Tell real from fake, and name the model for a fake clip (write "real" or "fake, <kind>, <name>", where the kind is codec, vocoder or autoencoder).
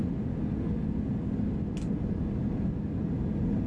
real